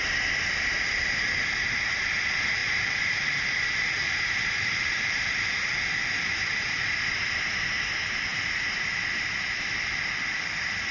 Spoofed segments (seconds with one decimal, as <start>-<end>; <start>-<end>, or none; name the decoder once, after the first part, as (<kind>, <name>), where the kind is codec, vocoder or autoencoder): 2.6-5.5 (vocoder, BigVGAN v2)